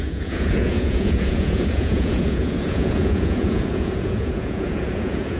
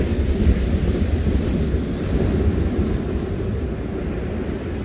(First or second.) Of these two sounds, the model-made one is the first